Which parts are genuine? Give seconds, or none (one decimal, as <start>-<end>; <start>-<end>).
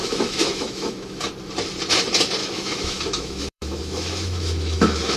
1.3-2.4